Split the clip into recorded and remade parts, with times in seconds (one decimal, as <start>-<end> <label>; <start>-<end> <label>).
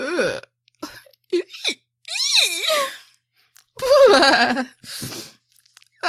0.0-6.1 recorded